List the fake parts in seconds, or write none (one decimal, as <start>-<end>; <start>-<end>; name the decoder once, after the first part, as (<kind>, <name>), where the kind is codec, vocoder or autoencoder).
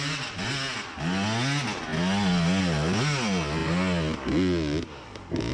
none